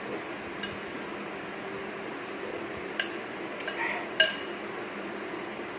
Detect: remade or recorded recorded